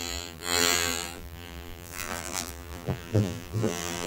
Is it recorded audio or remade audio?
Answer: remade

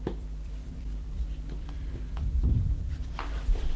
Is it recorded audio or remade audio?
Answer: remade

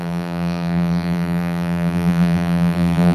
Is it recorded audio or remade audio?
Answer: remade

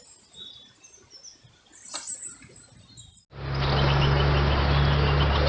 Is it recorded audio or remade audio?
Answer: recorded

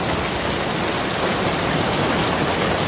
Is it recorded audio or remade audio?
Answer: recorded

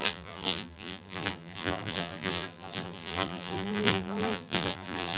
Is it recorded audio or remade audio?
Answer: remade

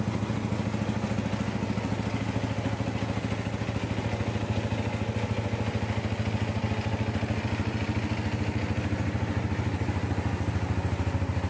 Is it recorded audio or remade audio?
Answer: recorded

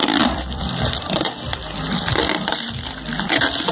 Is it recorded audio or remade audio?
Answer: remade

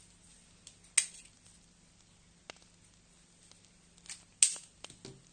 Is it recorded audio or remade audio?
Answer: recorded